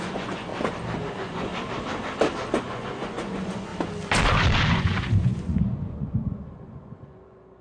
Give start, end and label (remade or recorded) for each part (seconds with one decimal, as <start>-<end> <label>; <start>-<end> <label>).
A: 0.0-0.5 remade; 0.5-1.1 recorded; 1.1-1.5 remade; 1.5-2.6 recorded; 2.6-3.7 remade; 3.7-4.7 recorded; 4.7-7.6 remade